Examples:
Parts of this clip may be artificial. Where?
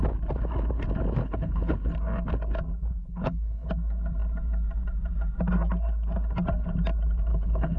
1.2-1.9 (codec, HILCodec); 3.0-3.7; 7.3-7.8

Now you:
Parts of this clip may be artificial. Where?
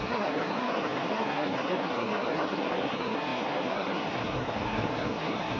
0.0-5.6 (codec, SNAC)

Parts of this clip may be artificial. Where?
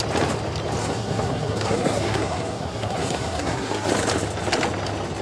0.8-3.9 (codec, SNAC)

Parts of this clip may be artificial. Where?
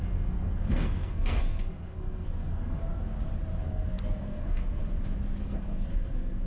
0.0-2.9 (codec, SNAC); 3.6-4.8; 5.4-6.5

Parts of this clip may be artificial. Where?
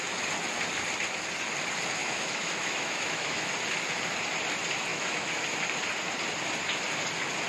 2.0-3.5 (autoencoder, DAC-VAE); 4.9-5.4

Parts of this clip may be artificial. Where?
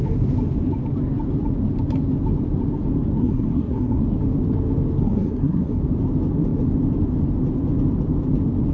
3.2-4.0 (codec, SNAC); 5.0-5.8